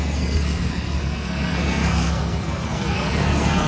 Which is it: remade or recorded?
remade